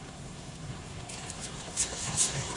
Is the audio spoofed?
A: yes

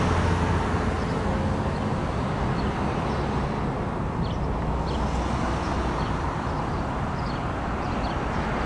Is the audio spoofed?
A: no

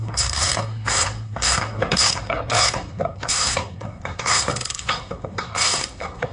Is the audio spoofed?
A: yes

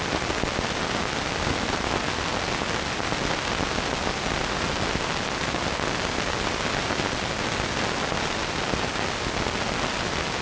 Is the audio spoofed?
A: no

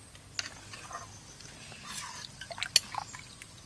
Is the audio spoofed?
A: no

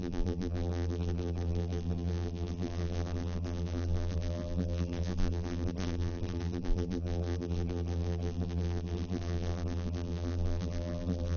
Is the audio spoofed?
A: yes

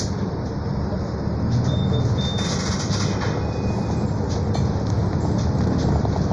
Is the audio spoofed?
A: no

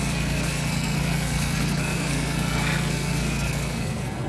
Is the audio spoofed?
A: yes